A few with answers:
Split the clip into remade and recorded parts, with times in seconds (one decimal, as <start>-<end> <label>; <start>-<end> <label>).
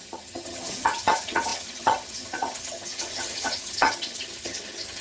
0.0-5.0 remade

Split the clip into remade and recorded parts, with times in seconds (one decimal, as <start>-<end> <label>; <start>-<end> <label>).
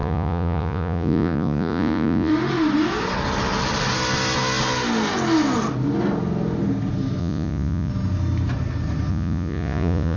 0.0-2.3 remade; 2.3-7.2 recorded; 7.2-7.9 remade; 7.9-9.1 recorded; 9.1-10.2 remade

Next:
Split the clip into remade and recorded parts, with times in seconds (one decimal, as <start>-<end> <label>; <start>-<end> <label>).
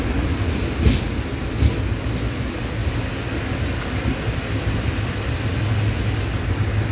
0.0-6.9 recorded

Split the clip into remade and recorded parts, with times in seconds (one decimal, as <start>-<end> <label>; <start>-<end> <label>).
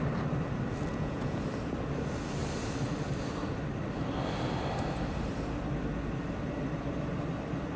0.0-0.9 recorded; 0.9-1.4 remade; 1.4-7.8 recorded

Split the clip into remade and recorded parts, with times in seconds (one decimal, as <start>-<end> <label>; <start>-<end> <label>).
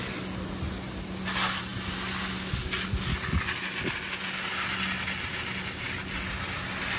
0.0-7.0 recorded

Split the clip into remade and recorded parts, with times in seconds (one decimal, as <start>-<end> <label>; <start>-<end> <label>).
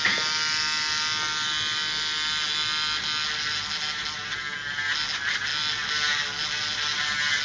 0.0-7.4 recorded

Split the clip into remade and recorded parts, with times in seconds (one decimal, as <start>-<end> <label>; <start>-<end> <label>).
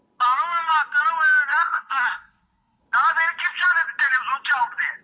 0.0-1.5 recorded; 1.5-2.8 remade; 2.8-5.0 recorded